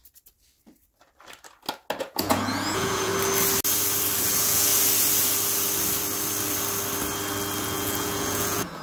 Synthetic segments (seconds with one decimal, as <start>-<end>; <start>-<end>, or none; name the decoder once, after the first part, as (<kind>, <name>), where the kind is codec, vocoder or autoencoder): 2.0-3.1 (vocoder, Vocos); 4.2-4.7; 7.6-8.8